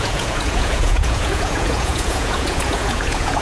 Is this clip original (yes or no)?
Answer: no